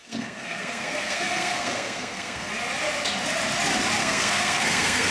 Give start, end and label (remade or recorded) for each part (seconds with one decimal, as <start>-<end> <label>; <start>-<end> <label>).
0.0-2.5 remade; 2.5-4.0 recorded; 4.0-5.1 remade